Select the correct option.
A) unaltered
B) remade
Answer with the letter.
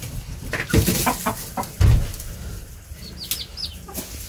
A